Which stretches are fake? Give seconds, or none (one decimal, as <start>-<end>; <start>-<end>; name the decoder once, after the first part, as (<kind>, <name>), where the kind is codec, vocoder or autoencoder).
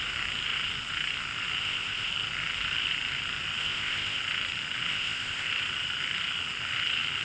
1.6-2.1 (codec, ZipCodec); 3.6-4.2; 4.9-5.5